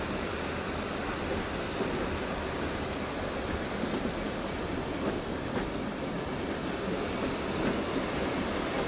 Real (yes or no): yes